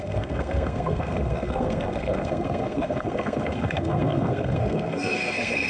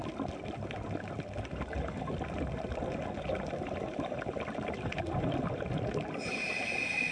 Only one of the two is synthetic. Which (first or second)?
first